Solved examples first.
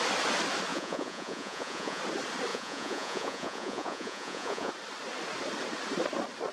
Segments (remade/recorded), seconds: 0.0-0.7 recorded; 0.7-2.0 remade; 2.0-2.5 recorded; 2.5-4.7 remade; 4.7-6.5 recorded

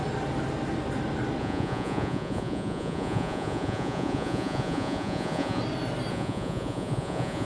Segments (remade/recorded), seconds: 0.0-1.4 recorded; 1.4-5.6 remade; 5.6-6.1 recorded; 6.1-7.4 remade

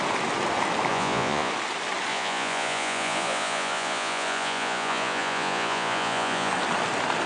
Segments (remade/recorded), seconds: 0.0-0.9 recorded; 0.9-1.5 remade; 1.5-2.1 recorded; 2.1-6.5 remade; 6.5-7.3 recorded

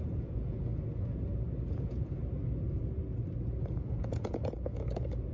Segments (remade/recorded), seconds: 0.0-0.7 remade; 0.7-1.8 recorded; 1.8-2.2 remade; 2.2-3.6 recorded; 3.6-5.3 remade